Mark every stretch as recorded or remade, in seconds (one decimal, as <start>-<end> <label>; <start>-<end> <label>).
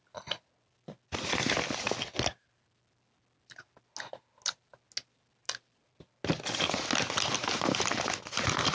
0.0-8.7 recorded